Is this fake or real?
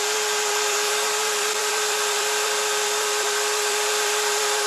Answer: fake